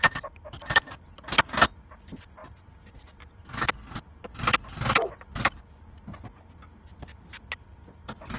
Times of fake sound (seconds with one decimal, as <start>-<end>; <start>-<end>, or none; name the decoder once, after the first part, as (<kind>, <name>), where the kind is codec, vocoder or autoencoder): none